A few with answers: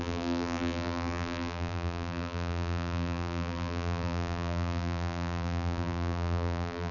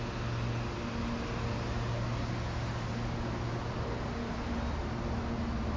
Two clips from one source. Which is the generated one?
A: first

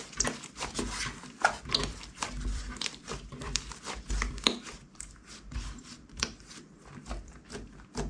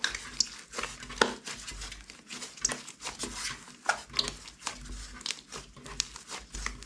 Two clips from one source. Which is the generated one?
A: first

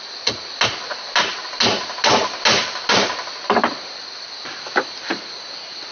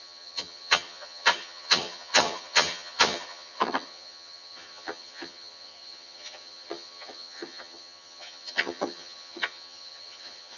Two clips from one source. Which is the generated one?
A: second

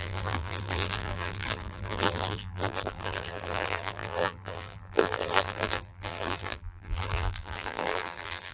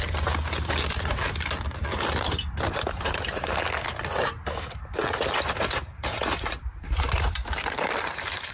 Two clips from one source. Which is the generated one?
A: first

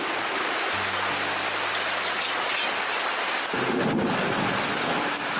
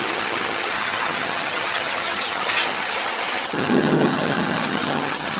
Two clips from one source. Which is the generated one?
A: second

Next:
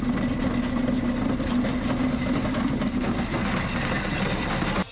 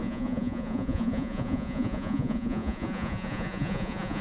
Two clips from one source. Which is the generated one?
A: second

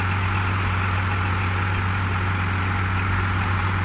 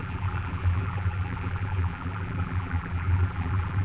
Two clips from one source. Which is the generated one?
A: second